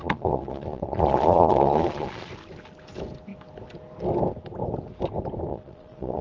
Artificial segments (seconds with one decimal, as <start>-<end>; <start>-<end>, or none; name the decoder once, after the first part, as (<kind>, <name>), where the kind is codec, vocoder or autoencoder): 0.0-2.3 (vocoder, Vocos); 5.5-6.2